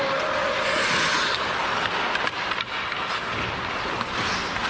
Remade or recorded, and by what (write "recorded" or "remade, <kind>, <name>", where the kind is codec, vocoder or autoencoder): recorded